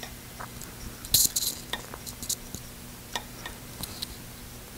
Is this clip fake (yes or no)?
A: no